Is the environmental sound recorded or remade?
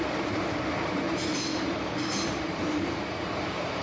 remade